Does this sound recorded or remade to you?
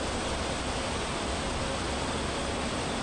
recorded